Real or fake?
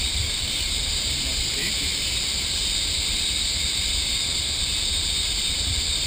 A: fake